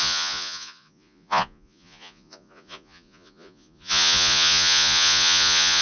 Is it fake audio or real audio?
fake